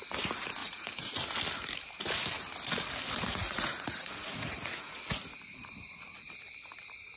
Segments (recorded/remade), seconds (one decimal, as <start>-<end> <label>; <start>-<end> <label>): 0.0-0.6 recorded; 0.6-1.2 remade; 1.2-3.4 recorded; 3.4-5.0 remade; 5.0-7.2 recorded